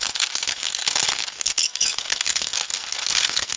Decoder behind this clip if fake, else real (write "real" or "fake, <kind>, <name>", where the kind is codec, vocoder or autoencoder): fake, codec, SNAC